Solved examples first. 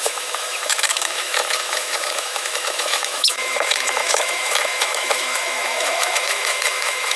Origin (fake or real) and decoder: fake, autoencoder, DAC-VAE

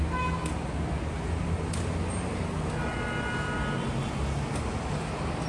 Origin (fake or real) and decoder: real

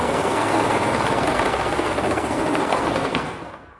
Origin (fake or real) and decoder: fake, codec, SNAC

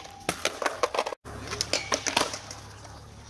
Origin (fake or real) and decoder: real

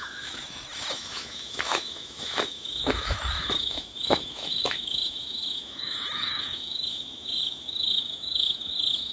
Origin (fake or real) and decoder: fake, autoencoder, DAC-VAE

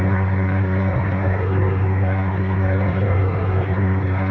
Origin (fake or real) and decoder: fake, codec, SNAC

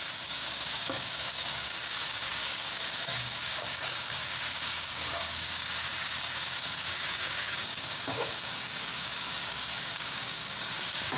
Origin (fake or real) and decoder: fake, codec, DAC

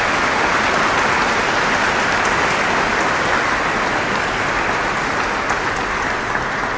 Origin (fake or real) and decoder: real